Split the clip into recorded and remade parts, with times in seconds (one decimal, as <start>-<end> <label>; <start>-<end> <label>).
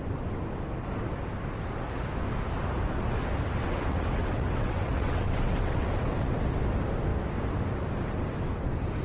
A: 0.0-3.6 recorded; 3.6-6.3 remade; 6.3-9.0 recorded